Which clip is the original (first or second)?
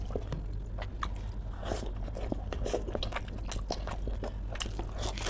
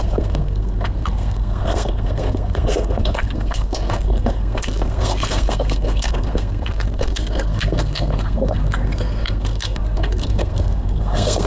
first